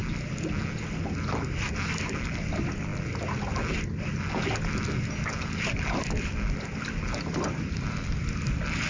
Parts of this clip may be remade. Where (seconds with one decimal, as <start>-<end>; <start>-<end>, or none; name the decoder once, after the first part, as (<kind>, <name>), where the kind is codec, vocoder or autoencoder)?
none

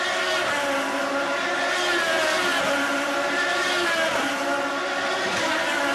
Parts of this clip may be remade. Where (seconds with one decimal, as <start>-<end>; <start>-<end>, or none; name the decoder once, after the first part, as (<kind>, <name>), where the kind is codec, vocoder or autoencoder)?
none

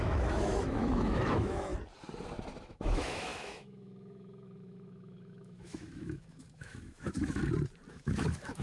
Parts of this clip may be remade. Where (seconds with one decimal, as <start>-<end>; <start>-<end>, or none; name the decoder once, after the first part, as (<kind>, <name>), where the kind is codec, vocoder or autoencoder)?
0.0-1.7 (autoencoder, DAC-VAE); 2.6-7.4; 7.9-8.6